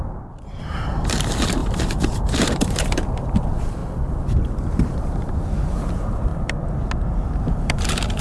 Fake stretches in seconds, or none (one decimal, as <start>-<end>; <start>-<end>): 0.0-3.8; 4.6-6.3; 7.4-8.2